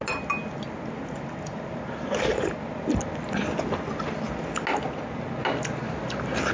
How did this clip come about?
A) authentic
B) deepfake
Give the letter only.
A